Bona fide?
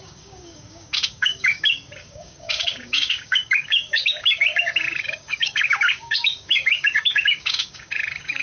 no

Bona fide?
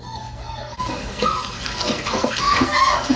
no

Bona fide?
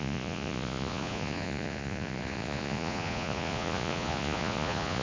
no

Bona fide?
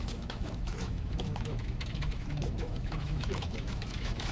no